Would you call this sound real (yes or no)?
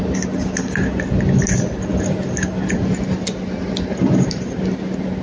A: yes